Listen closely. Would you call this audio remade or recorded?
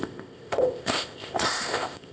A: remade